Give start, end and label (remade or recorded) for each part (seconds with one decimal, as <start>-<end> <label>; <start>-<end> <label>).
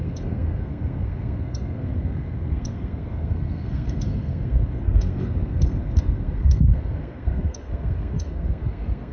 0.0-9.1 remade